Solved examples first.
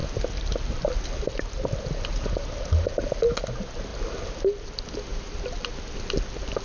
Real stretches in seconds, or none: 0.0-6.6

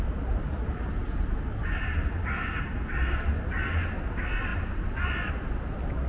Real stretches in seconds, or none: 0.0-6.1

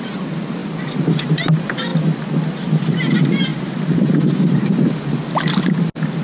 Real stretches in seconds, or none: 0.0-0.6; 1.2-3.5; 5.1-6.2

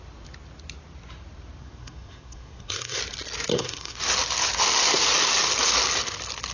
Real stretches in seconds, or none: 0.0-1.6; 3.0-3.5; 4.0-6.5

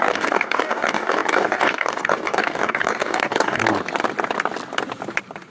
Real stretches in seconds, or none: 3.6-5.5

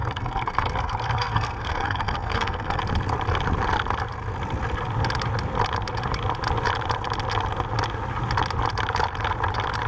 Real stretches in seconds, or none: 2.8-9.9